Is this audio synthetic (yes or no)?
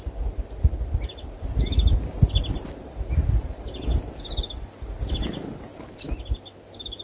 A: no